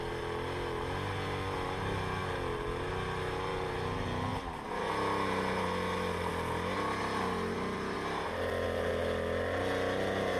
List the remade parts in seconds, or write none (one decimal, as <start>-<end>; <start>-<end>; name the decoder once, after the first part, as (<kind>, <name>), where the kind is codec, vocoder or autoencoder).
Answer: none